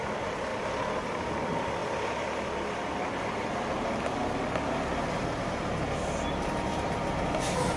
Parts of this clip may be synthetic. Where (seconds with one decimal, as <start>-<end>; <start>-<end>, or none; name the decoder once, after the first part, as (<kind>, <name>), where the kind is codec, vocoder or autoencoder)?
6.7-7.8 (vocoder, BigVGAN v2)